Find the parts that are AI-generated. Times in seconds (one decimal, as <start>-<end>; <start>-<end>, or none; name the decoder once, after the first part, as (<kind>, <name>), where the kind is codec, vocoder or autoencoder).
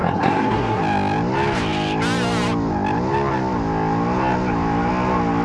0.0-0.8 (codec, SNAC)